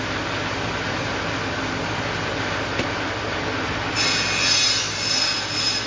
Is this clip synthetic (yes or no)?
no